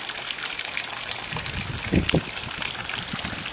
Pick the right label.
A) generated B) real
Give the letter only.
B